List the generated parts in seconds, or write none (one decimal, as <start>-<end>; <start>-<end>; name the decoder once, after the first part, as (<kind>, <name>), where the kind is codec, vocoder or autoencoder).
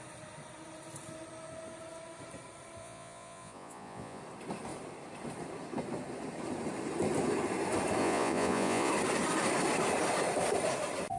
2.8-4.2 (vocoder, Vocos); 8.0-8.9